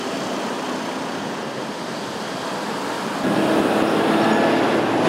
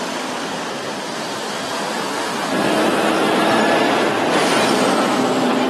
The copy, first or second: second